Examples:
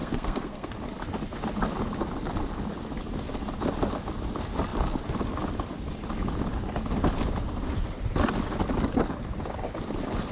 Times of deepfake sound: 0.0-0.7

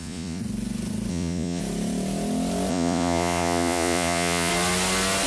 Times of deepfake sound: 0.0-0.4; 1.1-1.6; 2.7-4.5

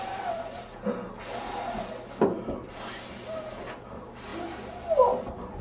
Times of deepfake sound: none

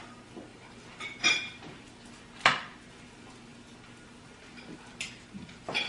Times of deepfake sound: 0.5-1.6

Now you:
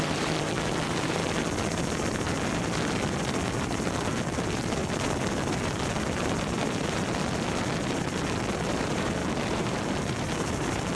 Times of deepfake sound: 0.0-1.2; 3.5-4.8; 8.6-10.9

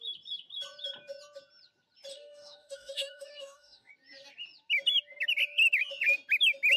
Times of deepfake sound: 2.1-3.9

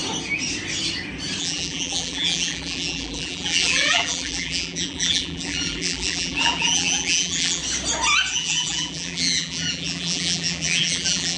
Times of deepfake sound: 1.4-7.6; 8.3-11.4

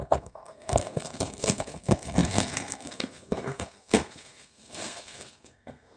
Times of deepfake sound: 0.0-6.0